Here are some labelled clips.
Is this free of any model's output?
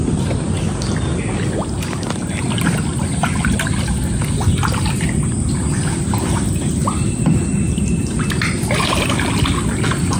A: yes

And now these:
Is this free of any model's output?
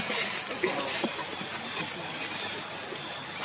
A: yes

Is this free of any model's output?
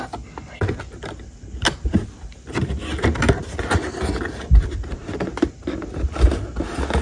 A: yes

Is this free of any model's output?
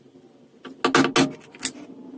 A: yes